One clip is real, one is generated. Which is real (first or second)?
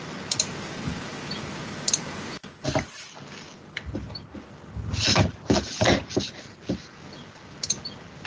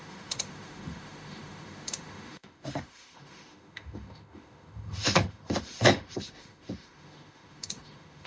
first